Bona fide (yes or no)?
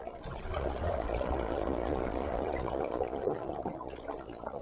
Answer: no